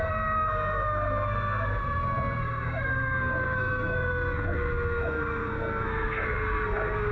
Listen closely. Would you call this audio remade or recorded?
remade